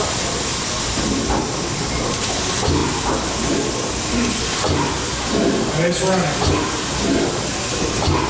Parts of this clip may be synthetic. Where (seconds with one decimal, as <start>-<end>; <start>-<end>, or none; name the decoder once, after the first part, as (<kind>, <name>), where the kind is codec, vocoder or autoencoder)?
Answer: none